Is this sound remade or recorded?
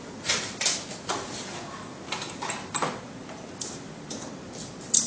recorded